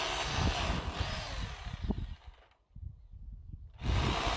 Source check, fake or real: real